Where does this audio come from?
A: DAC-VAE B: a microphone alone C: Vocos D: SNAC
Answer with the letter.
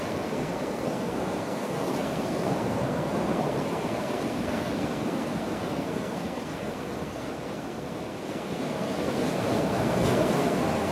D